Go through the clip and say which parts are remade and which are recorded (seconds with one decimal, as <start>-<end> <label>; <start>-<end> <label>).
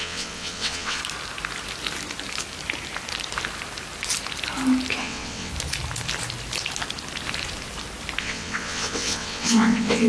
0.0-1.0 remade; 1.0-5.0 recorded; 5.0-5.5 remade; 5.5-8.2 recorded; 8.2-10.1 remade